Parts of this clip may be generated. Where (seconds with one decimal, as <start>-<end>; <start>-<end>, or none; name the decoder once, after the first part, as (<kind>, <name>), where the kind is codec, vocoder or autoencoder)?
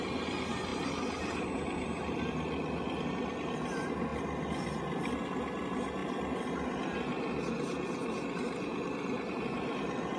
none